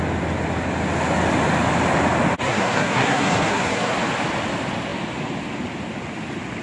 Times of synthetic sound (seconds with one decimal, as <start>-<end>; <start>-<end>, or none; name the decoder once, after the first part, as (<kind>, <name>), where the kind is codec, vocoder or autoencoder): 2.4-3.9 (codec, SNAC)